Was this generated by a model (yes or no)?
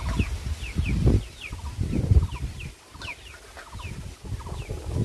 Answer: no